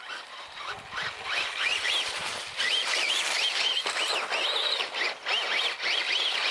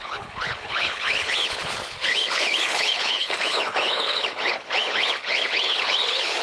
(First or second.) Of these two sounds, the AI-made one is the second